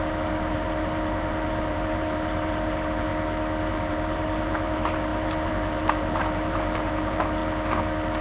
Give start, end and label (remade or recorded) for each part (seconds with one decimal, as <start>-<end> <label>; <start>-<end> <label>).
0.0-3.1 remade; 3.1-3.7 recorded; 3.7-7.4 remade; 7.4-8.2 recorded